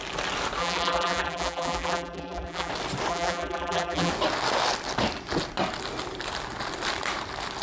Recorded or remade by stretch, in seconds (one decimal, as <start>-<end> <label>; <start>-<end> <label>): 0.0-0.6 recorded; 0.6-2.7 remade; 2.7-3.1 recorded; 3.1-4.1 remade; 4.1-7.6 recorded